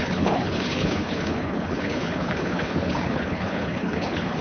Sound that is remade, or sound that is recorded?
remade